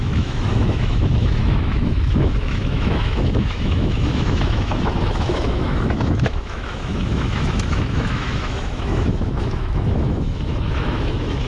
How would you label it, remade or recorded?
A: remade